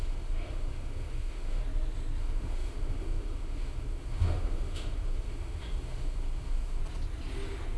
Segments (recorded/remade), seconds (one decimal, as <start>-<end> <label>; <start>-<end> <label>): 0.0-1.6 remade; 1.6-2.2 recorded; 2.2-6.8 remade; 6.8-7.8 recorded